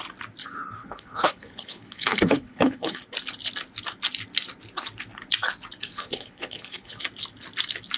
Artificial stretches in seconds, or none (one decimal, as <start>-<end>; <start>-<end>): 0.4-3.0; 5.8-7.0